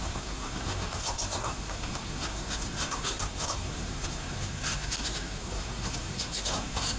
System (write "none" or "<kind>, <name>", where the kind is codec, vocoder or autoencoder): codec, SNAC